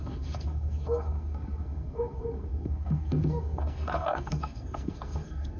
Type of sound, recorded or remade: remade